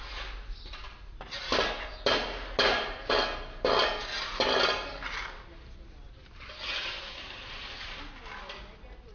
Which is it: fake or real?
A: real